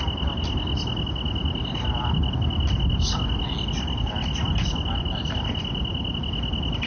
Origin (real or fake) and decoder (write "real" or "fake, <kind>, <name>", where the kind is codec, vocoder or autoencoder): real